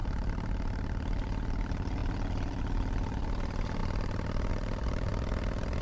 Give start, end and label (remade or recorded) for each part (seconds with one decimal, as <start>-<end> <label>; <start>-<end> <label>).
0.0-5.1 remade; 5.1-5.8 recorded